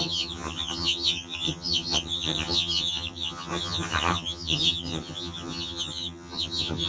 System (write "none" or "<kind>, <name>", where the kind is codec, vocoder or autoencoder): vocoder, HiFi-GAN